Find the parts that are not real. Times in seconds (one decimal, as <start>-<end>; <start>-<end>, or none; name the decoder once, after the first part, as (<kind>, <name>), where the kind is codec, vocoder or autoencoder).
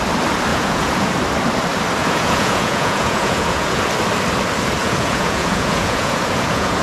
0.5-1.1 (vocoder, Vocos); 2.0-3.8; 4.8-6.8